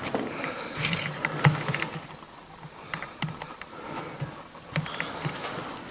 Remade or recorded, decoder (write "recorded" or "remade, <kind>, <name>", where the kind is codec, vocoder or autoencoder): remade, vocoder, BigVGAN v2